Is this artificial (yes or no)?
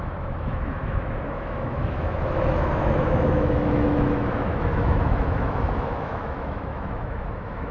yes